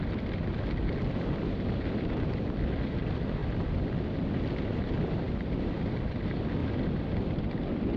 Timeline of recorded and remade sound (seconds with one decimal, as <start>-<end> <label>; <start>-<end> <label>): 0.0-8.0 recorded